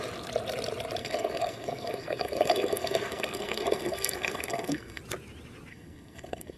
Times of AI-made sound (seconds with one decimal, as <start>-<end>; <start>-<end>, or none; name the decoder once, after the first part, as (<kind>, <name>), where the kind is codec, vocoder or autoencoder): 1.0-5.0 (codec, SNAC); 5.7-6.6